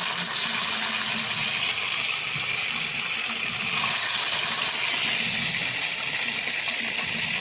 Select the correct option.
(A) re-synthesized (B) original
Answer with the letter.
B